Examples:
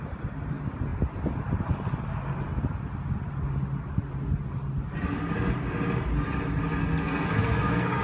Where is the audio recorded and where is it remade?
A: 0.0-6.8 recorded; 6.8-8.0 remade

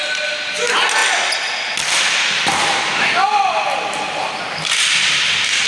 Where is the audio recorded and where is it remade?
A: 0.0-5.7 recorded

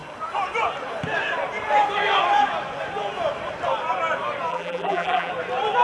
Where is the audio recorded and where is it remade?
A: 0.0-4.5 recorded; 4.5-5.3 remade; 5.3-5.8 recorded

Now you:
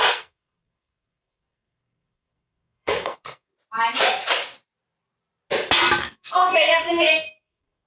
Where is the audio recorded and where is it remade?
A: 0.0-3.5 remade; 3.5-6.0 recorded; 6.0-7.9 remade

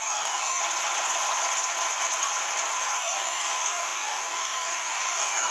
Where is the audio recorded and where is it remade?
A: 0.0-0.6 remade; 0.6-2.8 recorded; 2.8-5.5 remade

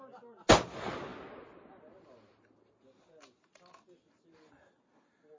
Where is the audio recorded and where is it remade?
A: 0.0-5.4 recorded

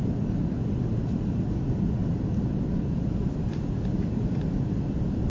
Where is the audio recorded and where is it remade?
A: 0.0-2.0 recorded; 2.0-5.3 remade